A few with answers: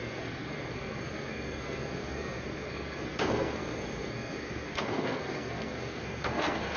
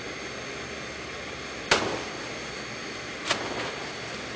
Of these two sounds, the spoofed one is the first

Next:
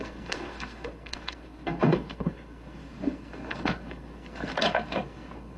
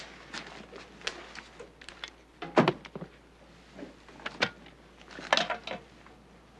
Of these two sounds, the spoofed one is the first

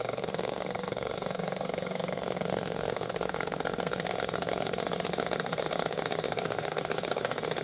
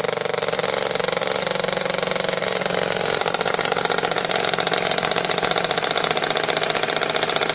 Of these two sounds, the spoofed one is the first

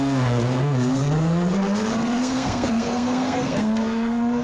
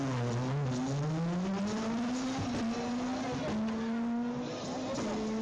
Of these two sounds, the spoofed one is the first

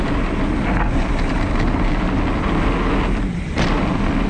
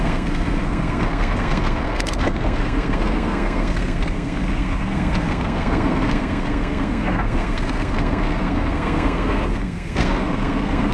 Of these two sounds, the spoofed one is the second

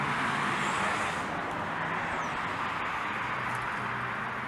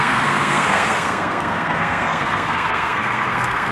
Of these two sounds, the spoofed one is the second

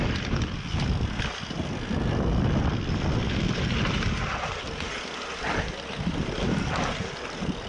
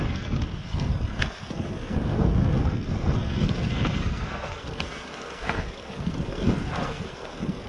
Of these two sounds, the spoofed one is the second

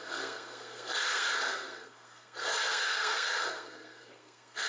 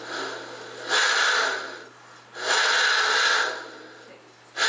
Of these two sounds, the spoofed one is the first